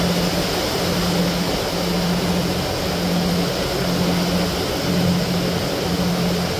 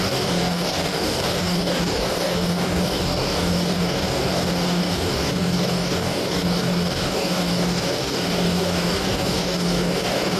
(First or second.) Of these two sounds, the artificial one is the second